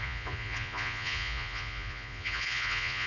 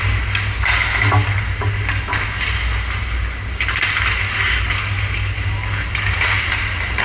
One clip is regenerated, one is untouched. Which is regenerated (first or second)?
first